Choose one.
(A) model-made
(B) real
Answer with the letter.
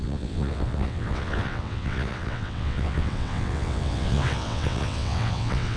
A